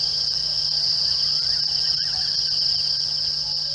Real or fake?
real